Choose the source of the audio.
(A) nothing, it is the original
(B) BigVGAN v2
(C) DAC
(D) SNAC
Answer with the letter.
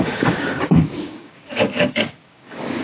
C